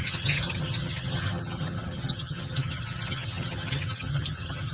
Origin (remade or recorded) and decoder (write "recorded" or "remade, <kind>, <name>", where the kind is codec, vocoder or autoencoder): remade, vocoder, HiFi-GAN